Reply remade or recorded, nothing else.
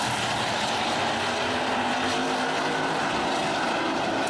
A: remade